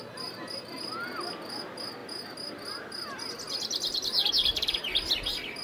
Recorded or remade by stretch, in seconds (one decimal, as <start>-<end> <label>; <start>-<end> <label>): 0.0-5.6 recorded

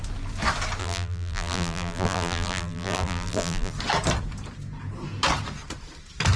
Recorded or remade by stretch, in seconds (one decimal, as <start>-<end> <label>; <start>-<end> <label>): 0.0-0.8 recorded; 0.8-3.7 remade; 3.7-6.4 recorded

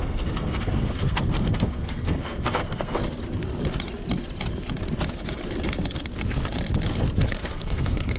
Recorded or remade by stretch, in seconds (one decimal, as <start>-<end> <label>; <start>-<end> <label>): 0.0-3.0 remade; 3.0-7.3 recorded; 7.3-8.2 remade

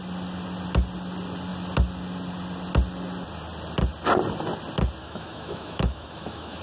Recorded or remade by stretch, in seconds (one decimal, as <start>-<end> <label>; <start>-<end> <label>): 0.0-5.0 recorded; 5.0-6.6 remade

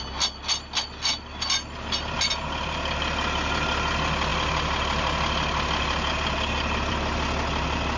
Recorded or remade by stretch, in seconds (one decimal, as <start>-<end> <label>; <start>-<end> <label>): 0.0-8.0 recorded